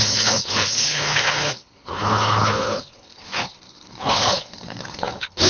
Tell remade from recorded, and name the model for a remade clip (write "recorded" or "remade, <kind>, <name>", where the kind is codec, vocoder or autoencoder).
remade, codec, HILCodec